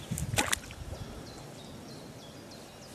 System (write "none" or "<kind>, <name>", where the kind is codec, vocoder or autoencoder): none